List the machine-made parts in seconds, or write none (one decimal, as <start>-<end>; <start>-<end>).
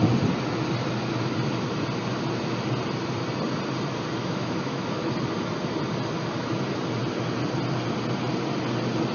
4.2-5.1